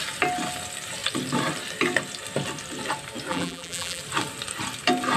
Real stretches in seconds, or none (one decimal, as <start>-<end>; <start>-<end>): 0.0-3.3; 4.0-5.2